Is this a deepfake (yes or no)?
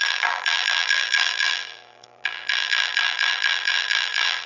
yes